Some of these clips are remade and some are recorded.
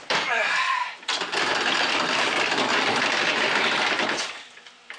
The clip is remade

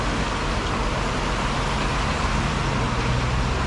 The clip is recorded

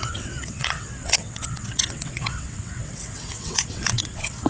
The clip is remade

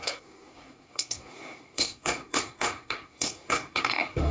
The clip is remade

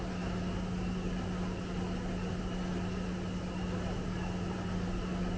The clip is recorded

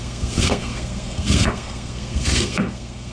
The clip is remade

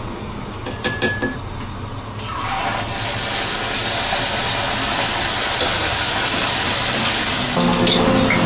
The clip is recorded